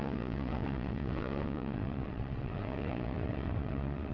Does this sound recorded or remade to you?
remade